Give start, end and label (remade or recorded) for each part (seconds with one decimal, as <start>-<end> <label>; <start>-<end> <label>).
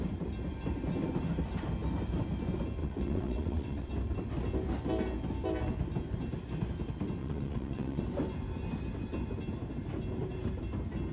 0.0-2.8 recorded; 2.8-3.9 remade; 3.9-7.2 recorded; 7.2-8.0 remade; 8.0-11.1 recorded